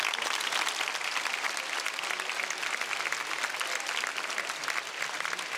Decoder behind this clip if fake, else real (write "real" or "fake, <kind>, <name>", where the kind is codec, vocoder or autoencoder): real